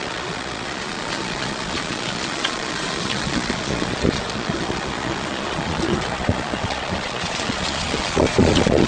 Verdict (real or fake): fake